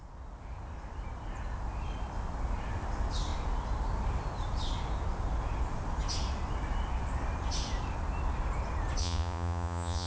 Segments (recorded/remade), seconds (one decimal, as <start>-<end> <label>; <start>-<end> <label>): 0.0-9.0 recorded; 9.0-10.1 remade